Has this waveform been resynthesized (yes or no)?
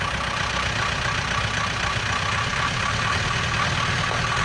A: no